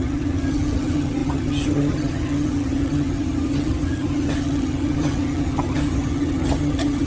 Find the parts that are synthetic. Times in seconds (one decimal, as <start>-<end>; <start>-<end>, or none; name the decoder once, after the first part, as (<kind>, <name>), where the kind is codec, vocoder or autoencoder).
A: 0.0-7.1 (vocoder, HiFi-GAN)